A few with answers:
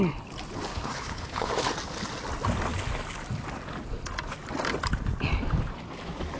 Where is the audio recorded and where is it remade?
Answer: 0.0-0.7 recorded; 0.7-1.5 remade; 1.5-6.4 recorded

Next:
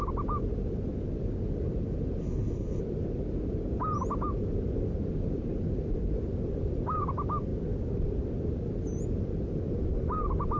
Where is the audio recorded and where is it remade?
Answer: 0.0-2.2 recorded; 2.2-2.8 remade; 2.8-10.6 recorded